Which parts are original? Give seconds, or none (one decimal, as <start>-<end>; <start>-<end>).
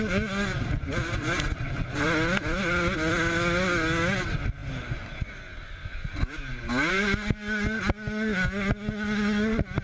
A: 0.0-9.8